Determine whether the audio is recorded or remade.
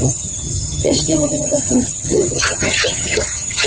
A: remade